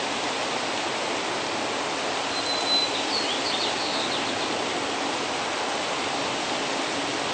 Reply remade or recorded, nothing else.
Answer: recorded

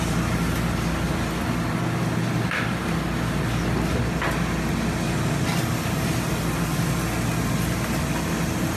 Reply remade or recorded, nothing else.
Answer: recorded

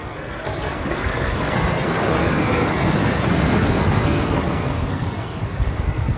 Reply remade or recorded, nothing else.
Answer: remade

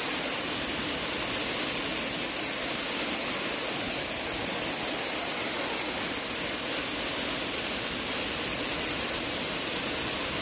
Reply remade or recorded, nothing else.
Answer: recorded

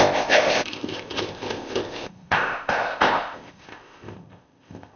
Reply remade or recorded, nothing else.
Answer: remade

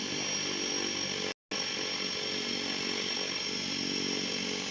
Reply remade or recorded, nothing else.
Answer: recorded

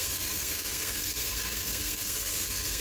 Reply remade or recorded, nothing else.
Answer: remade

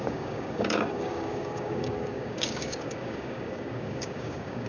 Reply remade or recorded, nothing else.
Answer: remade